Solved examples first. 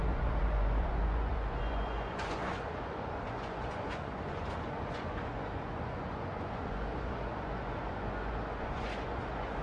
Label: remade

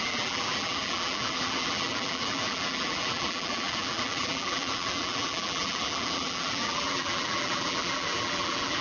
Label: remade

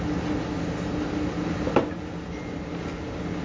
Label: recorded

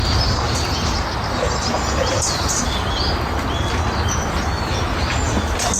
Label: recorded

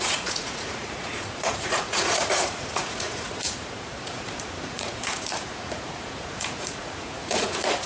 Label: remade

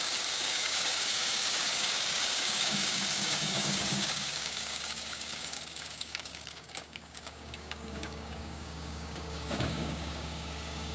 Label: remade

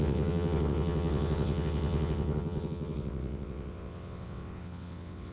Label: remade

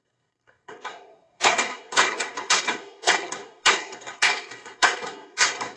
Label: remade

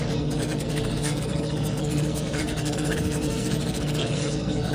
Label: remade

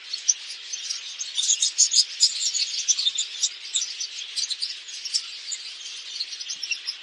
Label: remade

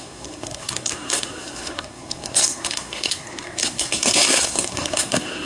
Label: remade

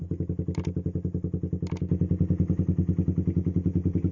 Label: recorded